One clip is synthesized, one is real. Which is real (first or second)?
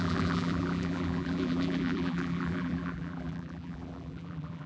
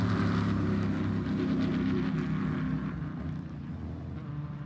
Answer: second